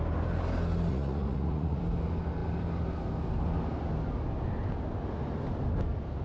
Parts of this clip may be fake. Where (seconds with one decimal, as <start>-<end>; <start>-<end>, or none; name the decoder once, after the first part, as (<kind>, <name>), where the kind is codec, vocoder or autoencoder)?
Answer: 0.9-1.8 (vocoder, Vocos)